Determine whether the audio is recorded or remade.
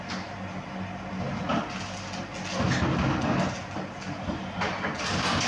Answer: recorded